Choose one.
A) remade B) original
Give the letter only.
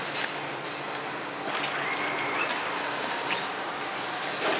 B